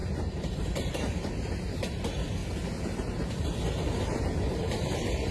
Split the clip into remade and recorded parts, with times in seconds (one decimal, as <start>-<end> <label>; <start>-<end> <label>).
0.0-2.4 remade; 2.4-4.2 recorded; 4.2-5.3 remade